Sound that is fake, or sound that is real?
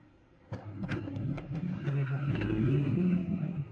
fake